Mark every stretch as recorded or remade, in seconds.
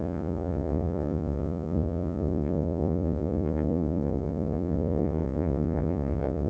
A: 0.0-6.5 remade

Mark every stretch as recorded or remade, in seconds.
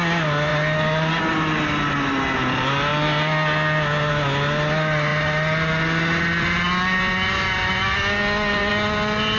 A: 0.0-9.4 recorded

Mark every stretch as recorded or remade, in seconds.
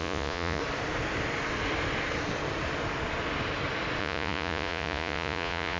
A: 0.0-0.6 remade; 0.6-4.0 recorded; 4.0-5.8 remade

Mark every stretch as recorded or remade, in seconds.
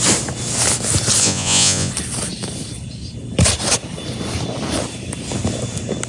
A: 0.0-1.2 recorded; 1.2-1.9 remade; 1.9-6.1 recorded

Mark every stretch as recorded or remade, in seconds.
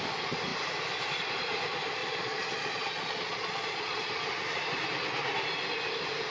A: 0.0-2.0 recorded; 2.0-4.1 remade; 4.1-6.3 recorded